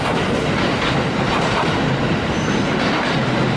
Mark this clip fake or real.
real